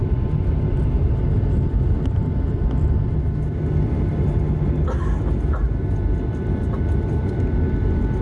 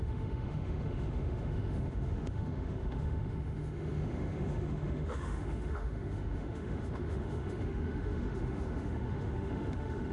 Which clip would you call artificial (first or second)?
second